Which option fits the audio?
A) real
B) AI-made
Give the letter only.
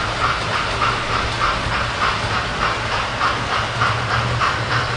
A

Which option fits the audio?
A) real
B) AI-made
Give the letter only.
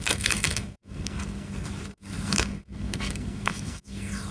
B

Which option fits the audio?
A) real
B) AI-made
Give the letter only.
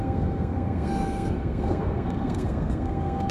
B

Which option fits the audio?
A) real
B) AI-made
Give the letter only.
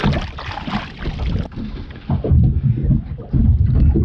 A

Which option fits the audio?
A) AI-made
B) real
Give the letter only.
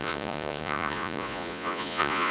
A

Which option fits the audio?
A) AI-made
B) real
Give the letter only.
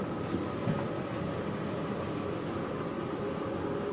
B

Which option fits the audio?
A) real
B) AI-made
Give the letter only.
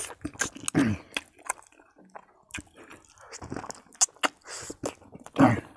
A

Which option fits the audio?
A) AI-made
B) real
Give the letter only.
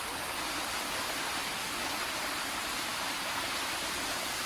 B